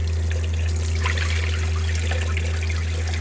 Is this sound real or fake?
real